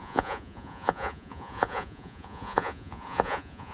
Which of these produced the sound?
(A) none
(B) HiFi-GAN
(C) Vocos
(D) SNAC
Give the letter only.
C